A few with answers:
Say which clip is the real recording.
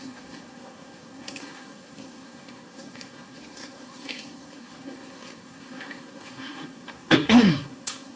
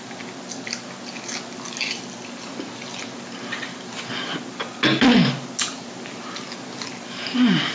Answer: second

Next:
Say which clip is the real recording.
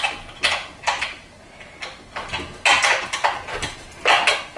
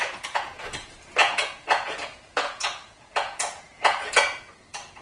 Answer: first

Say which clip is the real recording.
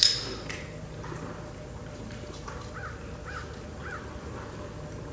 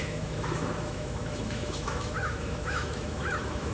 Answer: first